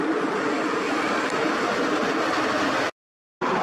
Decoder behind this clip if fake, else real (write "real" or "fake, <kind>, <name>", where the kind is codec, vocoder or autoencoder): real